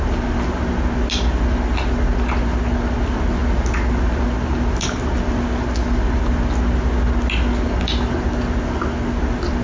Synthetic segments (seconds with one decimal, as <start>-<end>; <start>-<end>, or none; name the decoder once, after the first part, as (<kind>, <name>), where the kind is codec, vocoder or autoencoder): none